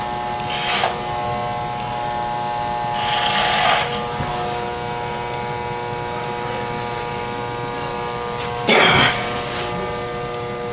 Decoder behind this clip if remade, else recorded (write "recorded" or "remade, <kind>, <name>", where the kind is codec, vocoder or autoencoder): recorded